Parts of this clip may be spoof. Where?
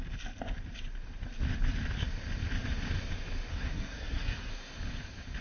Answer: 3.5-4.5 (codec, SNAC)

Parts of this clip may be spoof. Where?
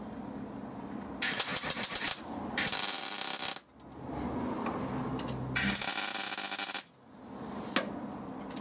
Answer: none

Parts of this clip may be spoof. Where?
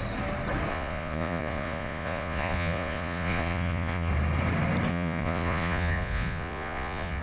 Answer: 0.7-4.1 (vocoder, Vocos); 4.9-7.2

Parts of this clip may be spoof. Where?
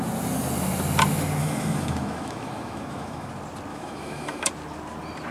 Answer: 1.4-3.3 (autoencoder, DAC-VAE); 3.7-4.5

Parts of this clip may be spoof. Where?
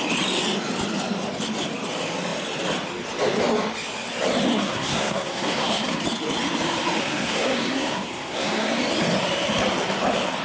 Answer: 4.5-6.0 (codec, SNAC); 7.0-8.8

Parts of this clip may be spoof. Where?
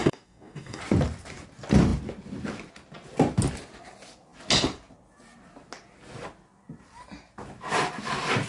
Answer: 0.0-0.8 (codec, DAC)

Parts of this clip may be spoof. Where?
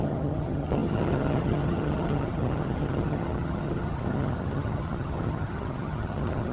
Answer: 0.0-6.5 (vocoder, HiFi-GAN)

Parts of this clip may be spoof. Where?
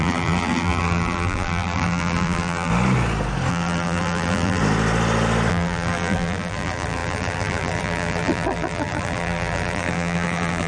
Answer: 0.0-2.7 (vocoder, BigVGAN v2); 3.5-4.6; 5.5-10.7